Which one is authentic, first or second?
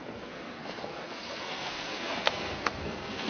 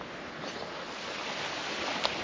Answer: second